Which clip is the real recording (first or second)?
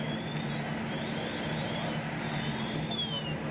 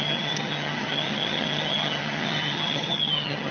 first